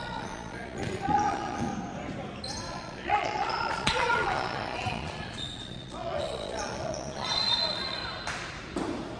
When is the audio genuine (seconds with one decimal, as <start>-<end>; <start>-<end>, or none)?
1.7-2.7; 8.0-9.2